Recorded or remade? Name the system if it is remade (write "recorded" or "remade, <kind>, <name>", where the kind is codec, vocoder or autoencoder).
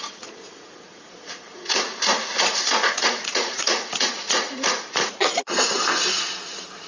remade, vocoder, Vocos